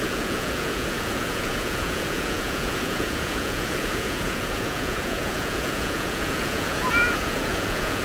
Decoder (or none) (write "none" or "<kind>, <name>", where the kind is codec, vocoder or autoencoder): vocoder, Vocos